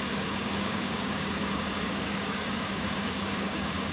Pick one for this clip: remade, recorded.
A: remade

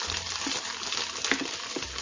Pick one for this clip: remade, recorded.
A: recorded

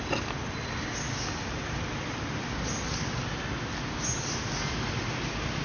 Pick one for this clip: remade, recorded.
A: recorded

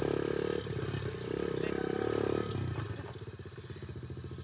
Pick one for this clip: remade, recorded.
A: recorded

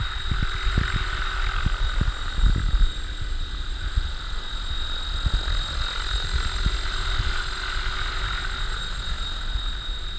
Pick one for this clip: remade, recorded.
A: recorded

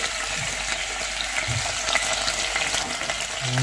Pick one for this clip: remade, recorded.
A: recorded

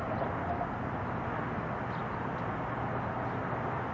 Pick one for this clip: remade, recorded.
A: recorded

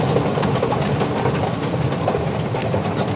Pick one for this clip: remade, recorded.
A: recorded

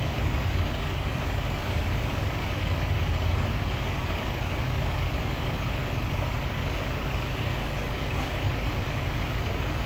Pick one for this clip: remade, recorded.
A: remade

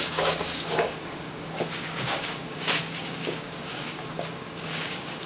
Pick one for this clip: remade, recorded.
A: remade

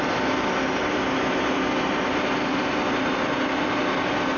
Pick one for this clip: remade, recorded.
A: recorded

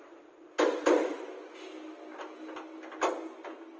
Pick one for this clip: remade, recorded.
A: recorded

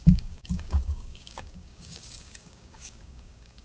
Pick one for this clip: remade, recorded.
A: remade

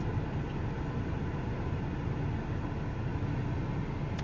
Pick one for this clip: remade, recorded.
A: recorded